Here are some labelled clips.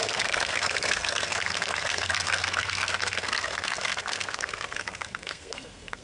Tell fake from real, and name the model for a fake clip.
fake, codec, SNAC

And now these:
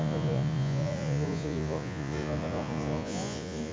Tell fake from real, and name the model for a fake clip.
fake, vocoder, Vocos